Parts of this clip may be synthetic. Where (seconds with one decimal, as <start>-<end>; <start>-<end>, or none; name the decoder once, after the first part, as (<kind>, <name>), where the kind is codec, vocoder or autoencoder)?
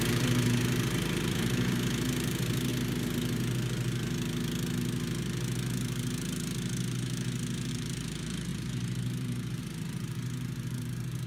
0.0-2.7 (vocoder, BigVGAN v2); 7.7-11.3